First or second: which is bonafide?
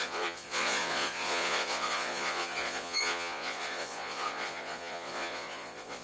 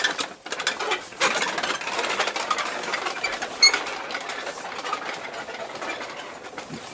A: second